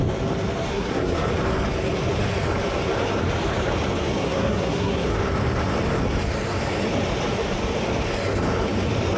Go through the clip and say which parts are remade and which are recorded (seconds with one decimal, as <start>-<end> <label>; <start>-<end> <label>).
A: 0.0-0.7 recorded; 0.7-1.3 remade; 1.3-4.2 recorded; 4.2-5.2 remade; 5.2-9.2 recorded